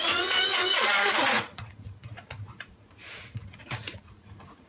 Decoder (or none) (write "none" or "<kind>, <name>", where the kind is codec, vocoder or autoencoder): vocoder, Vocos